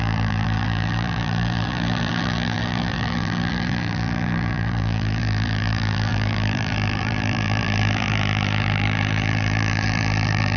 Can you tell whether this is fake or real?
fake